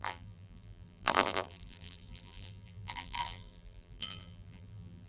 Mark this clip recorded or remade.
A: remade